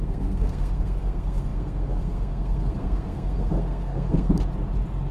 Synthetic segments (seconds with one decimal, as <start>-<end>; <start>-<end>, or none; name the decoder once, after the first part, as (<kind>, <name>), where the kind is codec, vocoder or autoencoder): 0.0-4.3 (codec, SNAC)